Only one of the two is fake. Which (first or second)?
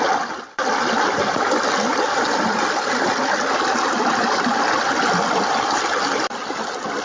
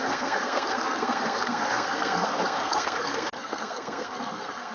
second